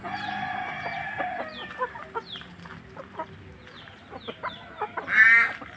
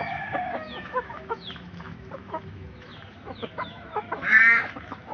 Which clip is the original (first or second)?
first